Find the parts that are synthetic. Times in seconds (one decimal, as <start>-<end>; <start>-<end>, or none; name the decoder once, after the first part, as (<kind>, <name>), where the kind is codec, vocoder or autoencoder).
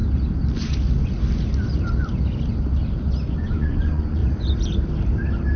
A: 3.4-4.2 (vocoder, Vocos)